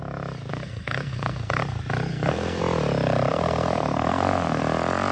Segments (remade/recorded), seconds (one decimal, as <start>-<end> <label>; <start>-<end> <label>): 0.0-0.5 recorded; 0.5-1.6 remade; 1.6-2.1 recorded; 2.1-2.6 remade; 2.6-3.3 recorded; 3.3-4.6 remade; 4.6-5.1 recorded